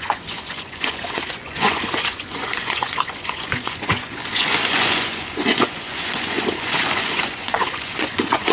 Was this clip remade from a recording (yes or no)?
yes